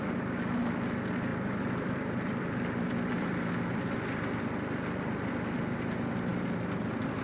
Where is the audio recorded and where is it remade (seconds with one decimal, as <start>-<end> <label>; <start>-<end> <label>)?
0.0-1.3 recorded; 1.3-5.6 remade; 5.6-6.3 recorded; 6.3-7.2 remade